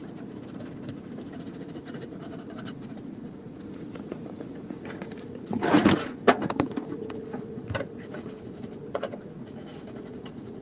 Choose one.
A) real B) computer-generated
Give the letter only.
B